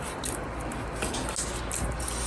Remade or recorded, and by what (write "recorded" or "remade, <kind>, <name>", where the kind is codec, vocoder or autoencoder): recorded